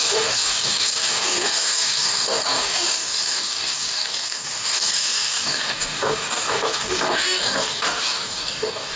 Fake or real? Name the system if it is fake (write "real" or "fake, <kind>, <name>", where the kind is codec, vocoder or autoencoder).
fake, codec, DAC